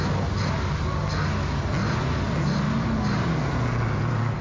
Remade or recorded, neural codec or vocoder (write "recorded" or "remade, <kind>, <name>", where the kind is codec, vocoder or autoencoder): recorded